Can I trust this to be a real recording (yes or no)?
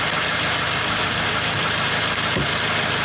yes